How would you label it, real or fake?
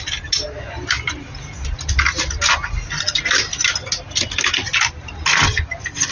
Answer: real